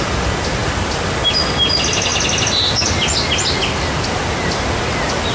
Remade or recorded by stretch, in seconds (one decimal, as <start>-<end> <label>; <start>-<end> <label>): 0.0-5.3 recorded